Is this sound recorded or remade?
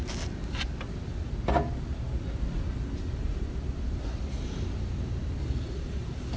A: recorded